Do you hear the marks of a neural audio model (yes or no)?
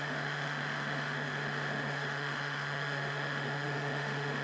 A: yes